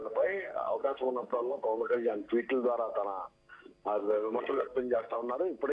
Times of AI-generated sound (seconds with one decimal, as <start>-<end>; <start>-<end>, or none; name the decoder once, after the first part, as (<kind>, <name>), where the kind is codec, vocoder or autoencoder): 0.0-2.2 (codec, SNAC); 4.0-5.2

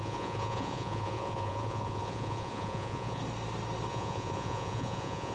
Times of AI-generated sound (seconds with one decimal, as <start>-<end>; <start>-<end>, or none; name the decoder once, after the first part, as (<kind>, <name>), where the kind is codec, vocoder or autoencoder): 0.0-3.2 (vocoder, Vocos); 3.9-5.3

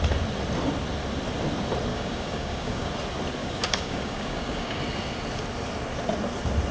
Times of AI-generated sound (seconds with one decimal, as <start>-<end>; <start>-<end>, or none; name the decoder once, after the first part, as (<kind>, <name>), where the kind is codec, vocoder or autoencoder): 1.9-2.9 (codec, DAC); 3.4-4.8

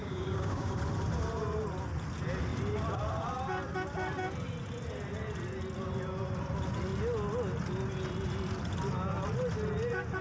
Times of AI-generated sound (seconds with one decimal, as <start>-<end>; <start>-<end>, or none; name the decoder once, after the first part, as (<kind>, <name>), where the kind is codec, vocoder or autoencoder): 0.0-0.7 (codec, DAC)

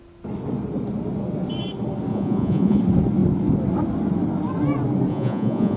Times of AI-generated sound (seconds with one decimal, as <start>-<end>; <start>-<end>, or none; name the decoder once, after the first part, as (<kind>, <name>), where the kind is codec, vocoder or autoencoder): 2.1-2.8 (vocoder, Vocos); 5.1-5.8